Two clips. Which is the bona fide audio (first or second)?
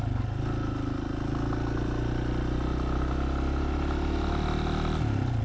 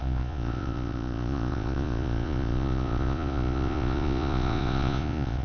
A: first